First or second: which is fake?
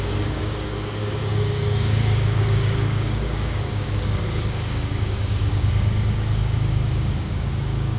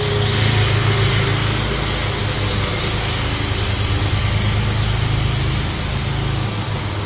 first